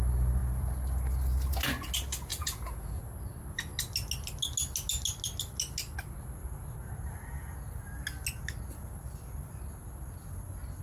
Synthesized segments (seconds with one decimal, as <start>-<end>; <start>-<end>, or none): 2.3-3.0